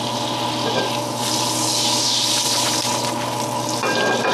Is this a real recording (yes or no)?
yes